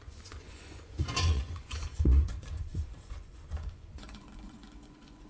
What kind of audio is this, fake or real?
fake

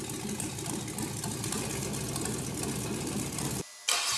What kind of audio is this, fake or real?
real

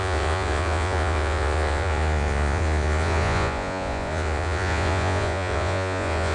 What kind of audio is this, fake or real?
fake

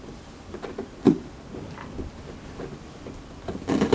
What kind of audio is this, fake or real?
real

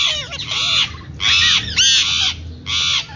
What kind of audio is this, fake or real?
real